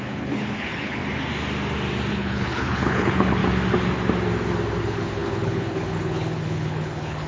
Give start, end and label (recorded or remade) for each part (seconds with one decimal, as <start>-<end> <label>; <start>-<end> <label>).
0.0-1.0 remade; 1.0-2.1 recorded; 2.1-3.4 remade; 3.4-4.8 recorded; 4.8-7.3 remade